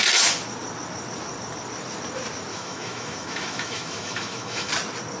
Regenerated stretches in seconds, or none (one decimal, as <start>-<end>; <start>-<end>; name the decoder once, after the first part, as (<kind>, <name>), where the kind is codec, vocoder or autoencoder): 2.5-4.7 (autoencoder, DAC-VAE)